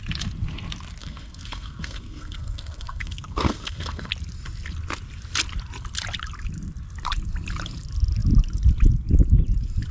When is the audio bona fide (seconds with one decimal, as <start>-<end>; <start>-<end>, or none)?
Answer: 0.0-1.0; 4.1-9.9